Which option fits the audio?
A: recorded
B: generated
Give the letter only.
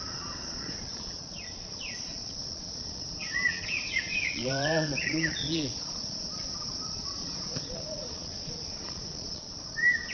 B